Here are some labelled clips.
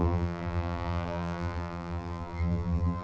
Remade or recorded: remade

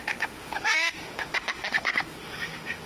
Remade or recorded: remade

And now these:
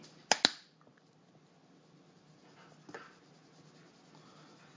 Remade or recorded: recorded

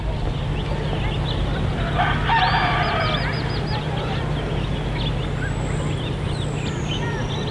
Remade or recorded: recorded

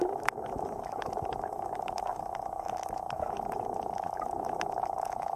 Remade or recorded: remade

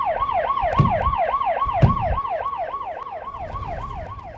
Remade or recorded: remade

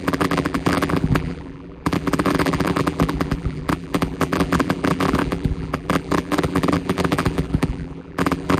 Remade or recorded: remade